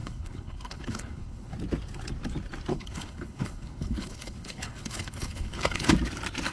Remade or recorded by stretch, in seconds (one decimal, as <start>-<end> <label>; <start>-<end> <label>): 0.0-1.5 remade; 1.5-2.7 recorded; 2.7-5.9 remade; 5.9-6.5 recorded